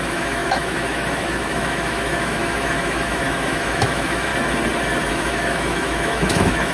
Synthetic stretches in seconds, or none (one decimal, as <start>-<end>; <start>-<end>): 0.0-4.3; 5.1-6.7